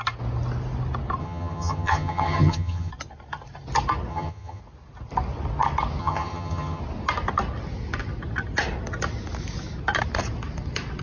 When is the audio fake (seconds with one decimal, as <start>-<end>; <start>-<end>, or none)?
1.2-2.9; 4.1-4.6; 6.0-6.8

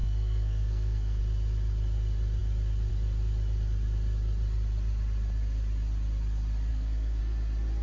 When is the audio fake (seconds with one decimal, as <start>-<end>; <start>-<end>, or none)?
0.0-1.2; 6.7-7.2

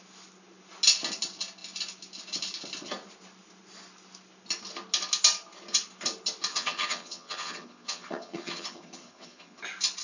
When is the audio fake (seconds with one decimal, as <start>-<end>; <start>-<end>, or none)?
6.5-9.6